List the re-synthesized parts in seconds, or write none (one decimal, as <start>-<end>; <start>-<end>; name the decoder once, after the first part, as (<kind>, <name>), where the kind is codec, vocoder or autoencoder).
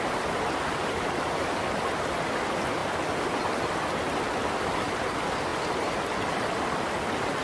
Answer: none